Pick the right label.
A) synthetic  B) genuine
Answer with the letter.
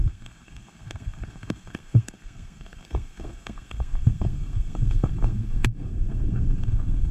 A